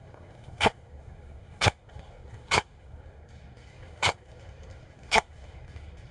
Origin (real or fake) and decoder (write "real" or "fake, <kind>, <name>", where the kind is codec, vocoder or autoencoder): fake, codec, SNAC